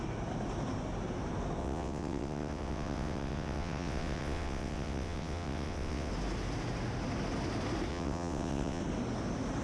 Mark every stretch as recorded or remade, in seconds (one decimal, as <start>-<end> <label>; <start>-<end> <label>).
0.0-1.6 recorded; 1.6-6.1 remade; 6.1-7.9 recorded; 7.9-8.8 remade; 8.8-9.6 recorded